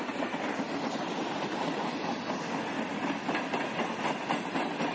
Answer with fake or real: real